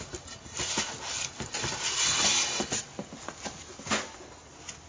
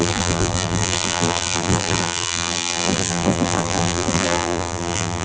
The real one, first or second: first